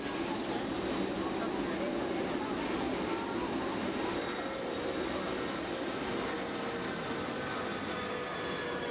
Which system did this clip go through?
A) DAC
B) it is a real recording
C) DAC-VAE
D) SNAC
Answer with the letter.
B